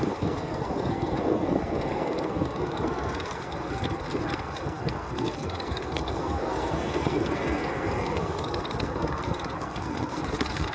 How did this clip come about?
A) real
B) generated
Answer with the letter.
B